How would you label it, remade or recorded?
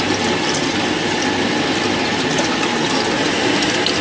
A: recorded